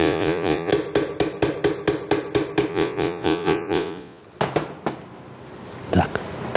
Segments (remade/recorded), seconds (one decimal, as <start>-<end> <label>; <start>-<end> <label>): 0.0-0.7 remade; 0.7-2.7 recorded; 2.7-4.2 remade; 4.2-6.6 recorded